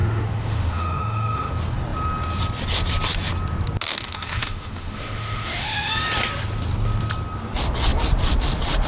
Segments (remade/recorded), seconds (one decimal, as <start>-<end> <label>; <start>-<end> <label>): 0.0-1.5 remade; 1.5-3.9 recorded; 3.9-5.9 remade; 5.9-8.9 recorded